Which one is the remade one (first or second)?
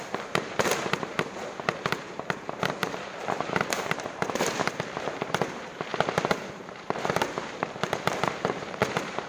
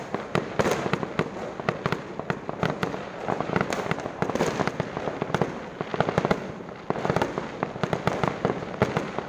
first